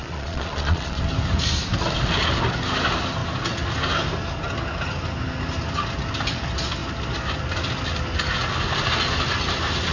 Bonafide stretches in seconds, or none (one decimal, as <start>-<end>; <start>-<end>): 1.0-9.9